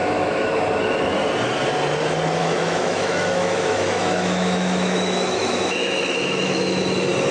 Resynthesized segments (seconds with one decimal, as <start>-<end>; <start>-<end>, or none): 0.0-0.6; 2.4-6.8